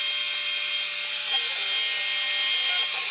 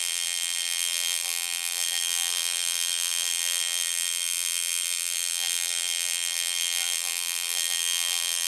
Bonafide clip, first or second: first